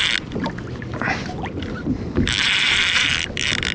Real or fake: real